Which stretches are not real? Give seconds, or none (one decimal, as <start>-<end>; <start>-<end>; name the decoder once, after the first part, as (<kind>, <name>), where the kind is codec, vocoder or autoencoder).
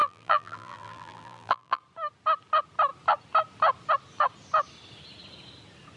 0.0-1.8 (vocoder, BigVGAN v2)